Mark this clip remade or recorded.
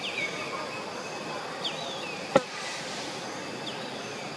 remade